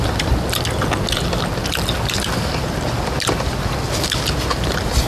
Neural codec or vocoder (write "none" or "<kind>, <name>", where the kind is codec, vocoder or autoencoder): none